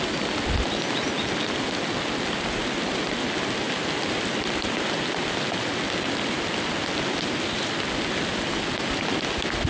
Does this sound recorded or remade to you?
recorded